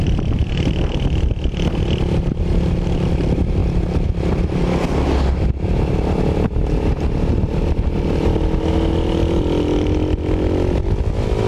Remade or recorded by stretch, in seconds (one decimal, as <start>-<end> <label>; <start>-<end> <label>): 0.0-11.5 recorded